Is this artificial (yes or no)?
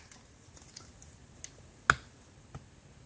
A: no